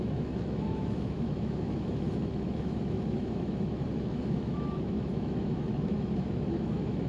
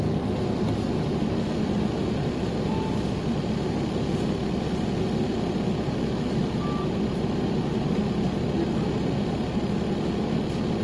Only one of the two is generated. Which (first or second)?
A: first